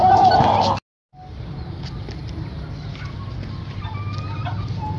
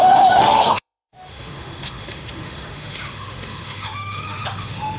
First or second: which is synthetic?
second